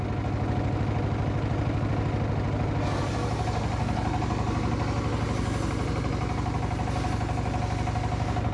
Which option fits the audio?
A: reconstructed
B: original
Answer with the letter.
B